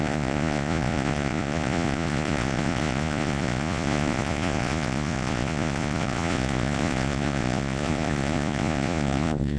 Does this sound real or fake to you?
fake